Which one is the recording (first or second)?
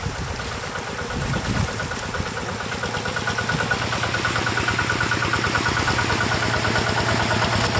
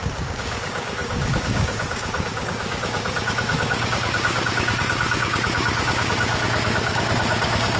first